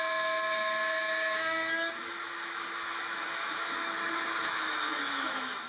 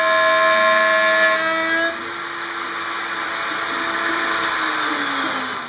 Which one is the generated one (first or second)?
first